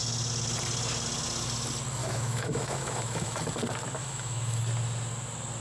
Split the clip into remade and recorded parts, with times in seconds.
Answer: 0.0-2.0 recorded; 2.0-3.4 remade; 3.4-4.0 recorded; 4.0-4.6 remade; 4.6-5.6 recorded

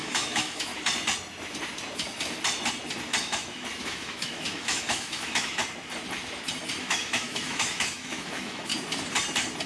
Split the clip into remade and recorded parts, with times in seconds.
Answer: 0.0-0.7 remade; 0.7-3.2 recorded; 3.2-5.6 remade; 5.6-6.8 recorded; 6.8-8.7 remade; 8.7-9.7 recorded

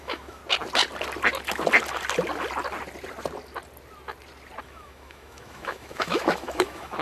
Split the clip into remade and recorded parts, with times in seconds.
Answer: 0.0-0.4 remade; 0.4-4.6 recorded; 4.6-7.0 remade

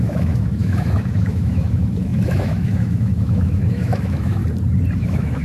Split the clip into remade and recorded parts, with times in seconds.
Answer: 0.0-4.4 remade; 4.4-5.0 recorded; 5.0-5.4 remade

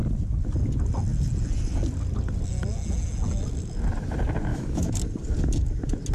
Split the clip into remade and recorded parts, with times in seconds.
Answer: 0.0-4.5 recorded; 4.5-5.0 remade; 5.0-6.1 recorded

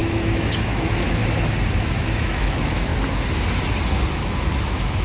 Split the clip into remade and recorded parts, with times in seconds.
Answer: 0.0-1.2 remade; 1.2-1.7 recorded; 1.7-2.9 remade; 2.9-4.1 recorded; 4.1-5.0 remade